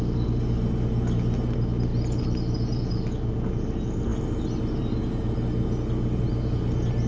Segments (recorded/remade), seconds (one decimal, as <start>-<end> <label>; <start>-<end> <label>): 0.0-7.1 recorded